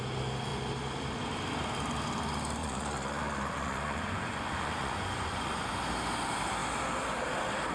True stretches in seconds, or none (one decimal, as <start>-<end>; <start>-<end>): 0.0-2.6; 5.8-7.7